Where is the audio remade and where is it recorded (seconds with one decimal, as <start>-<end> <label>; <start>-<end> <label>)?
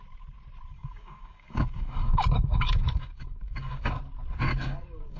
0.0-0.7 recorded; 0.7-3.8 remade; 3.8-4.5 recorded; 4.5-5.2 remade